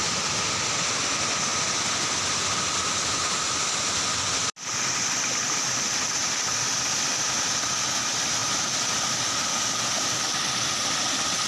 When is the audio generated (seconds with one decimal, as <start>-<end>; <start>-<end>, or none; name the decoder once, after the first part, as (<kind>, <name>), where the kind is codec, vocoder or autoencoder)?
none